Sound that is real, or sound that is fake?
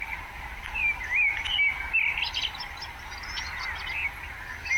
real